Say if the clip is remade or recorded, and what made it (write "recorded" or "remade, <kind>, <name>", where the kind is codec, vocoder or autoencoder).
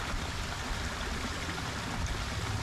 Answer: recorded